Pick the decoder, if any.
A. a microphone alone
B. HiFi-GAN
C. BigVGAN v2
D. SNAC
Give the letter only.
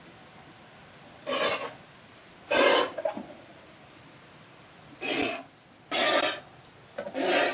A